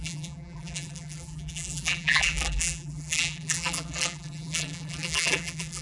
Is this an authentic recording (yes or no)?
no